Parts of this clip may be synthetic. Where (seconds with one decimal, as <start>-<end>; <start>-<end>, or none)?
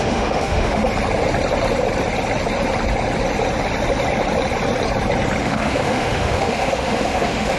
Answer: 0.0-0.8; 5.4-7.6